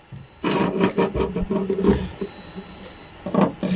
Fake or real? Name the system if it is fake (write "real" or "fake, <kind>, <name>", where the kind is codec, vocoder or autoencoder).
real